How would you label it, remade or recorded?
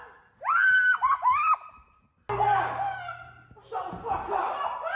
recorded